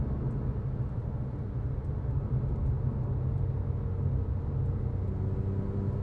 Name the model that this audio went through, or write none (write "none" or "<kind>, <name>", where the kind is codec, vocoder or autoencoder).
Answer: none